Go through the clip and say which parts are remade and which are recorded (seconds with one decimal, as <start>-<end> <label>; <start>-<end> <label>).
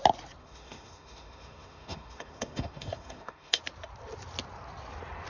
0.0-0.4 recorded; 0.4-3.6 remade; 3.6-5.3 recorded